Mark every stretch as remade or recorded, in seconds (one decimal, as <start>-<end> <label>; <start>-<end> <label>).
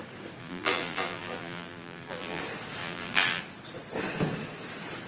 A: 0.0-0.4 recorded; 0.4-2.4 remade; 2.4-2.8 recorded; 2.8-3.4 remade; 3.4-5.1 recorded